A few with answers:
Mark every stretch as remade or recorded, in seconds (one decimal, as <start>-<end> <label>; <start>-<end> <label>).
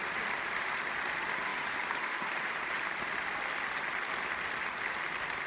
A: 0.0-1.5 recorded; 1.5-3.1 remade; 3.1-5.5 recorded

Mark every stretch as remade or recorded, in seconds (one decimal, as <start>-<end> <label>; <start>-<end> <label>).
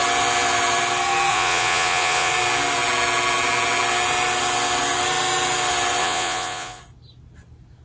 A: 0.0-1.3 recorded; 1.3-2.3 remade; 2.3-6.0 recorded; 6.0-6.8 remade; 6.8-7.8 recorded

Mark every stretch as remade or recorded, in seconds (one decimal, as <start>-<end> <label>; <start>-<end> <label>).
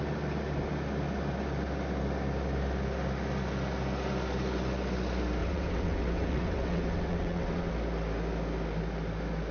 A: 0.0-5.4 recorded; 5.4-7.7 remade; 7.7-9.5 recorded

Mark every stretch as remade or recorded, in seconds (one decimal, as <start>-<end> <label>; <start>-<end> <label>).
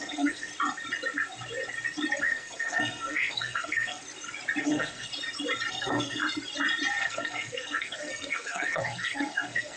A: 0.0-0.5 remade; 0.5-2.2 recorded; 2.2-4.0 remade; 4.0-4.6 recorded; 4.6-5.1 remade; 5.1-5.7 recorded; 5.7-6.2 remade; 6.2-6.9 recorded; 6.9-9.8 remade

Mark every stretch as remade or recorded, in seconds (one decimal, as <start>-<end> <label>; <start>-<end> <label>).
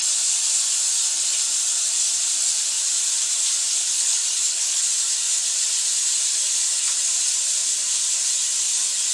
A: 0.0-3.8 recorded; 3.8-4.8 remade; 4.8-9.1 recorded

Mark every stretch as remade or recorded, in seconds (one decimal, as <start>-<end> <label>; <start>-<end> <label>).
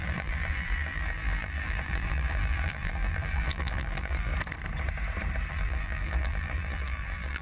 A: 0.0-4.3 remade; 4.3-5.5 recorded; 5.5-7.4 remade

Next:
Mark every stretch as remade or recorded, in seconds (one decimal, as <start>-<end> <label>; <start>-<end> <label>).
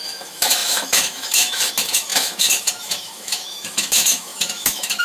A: 0.0-5.0 remade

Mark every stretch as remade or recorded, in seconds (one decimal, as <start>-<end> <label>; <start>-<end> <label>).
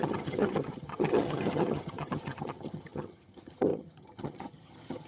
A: 0.0-5.1 remade